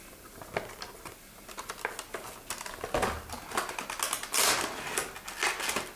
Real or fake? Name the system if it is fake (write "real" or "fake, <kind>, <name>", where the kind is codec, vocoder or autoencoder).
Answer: real